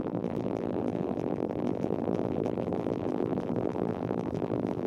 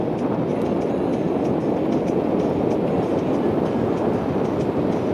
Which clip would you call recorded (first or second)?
second